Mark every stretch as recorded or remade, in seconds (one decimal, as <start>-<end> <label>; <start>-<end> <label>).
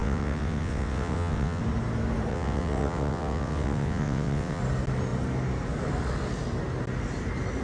0.0-1.6 remade; 1.6-2.3 recorded; 2.3-4.6 remade; 4.6-7.6 recorded